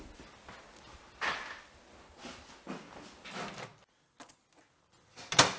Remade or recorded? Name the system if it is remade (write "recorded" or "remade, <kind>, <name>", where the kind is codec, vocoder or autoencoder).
recorded